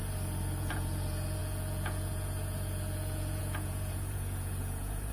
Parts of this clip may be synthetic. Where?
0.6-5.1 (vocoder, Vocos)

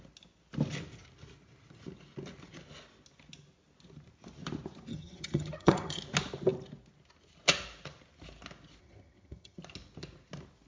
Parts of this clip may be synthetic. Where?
4.9-6.0 (vocoder, HiFi-GAN); 8.8-9.6

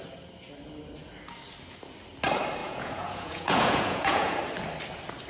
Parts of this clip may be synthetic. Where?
2.6-4.4 (vocoder, Vocos)

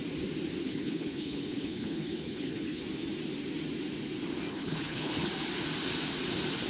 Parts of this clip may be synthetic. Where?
0.6-2.8 (codec, HILCodec); 4.5-5.3

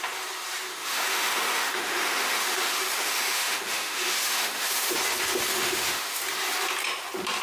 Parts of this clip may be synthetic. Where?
0.7-4.9 (autoencoder, DAC-VAE); 5.5-6.2